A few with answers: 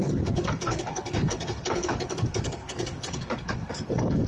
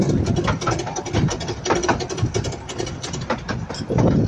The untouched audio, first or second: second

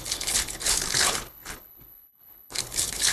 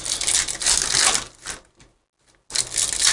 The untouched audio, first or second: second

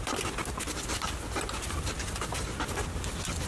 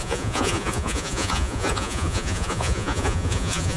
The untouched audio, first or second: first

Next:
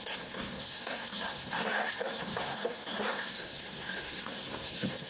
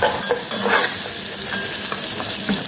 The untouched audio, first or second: second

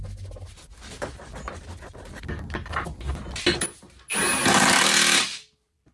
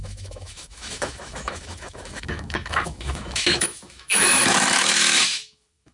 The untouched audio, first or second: first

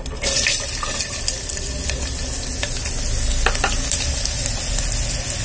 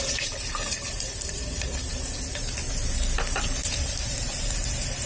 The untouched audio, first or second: first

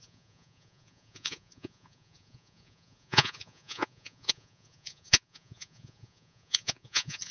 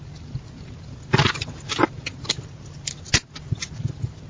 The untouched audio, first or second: second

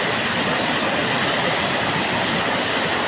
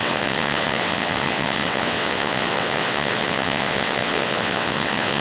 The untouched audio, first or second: first